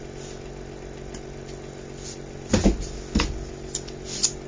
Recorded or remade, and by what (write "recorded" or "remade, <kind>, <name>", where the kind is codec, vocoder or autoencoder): recorded